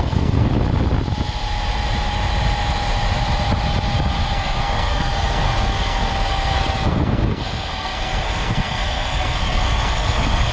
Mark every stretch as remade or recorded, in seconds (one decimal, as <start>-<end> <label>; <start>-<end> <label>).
0.0-0.5 remade; 0.5-4.3 recorded; 4.3-10.5 remade